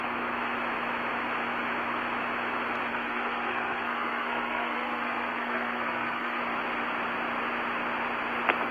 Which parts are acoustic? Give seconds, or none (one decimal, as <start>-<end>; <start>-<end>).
0.0-2.9; 6.4-8.7